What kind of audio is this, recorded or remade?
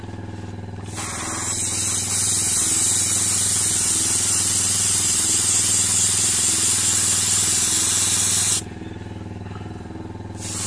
recorded